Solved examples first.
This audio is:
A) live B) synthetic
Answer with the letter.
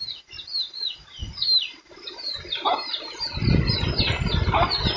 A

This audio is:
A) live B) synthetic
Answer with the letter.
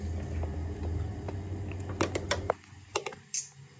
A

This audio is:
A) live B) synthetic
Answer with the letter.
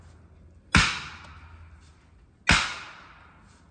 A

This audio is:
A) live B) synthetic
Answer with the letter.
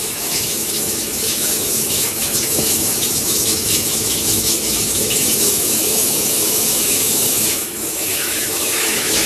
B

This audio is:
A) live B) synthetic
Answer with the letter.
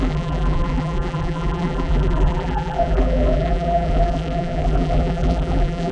B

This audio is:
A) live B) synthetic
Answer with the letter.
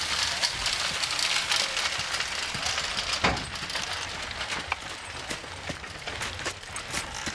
A